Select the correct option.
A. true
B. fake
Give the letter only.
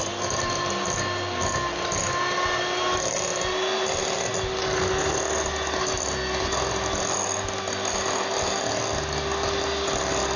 A